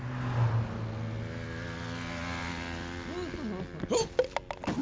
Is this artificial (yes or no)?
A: no